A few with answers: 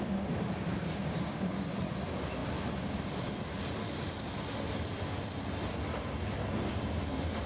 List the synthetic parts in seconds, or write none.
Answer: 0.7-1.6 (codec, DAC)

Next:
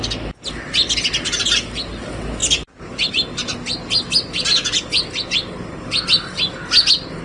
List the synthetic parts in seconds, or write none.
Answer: 2.4-3.1 (vocoder, BigVGAN v2)

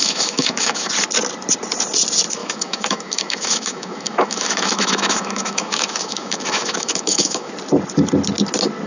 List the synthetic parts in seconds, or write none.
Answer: 0.0-0.9 (autoencoder, DAC-VAE); 2.4-7.5

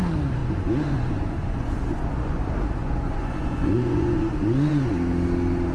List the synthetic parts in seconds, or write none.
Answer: 0.4-2.4 (vocoder, Vocos); 2.8-4.9

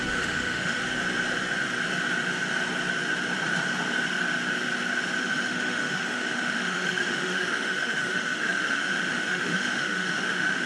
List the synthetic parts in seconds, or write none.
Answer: 0.0-0.8 (autoencoder, DAC-VAE); 5.2-10.7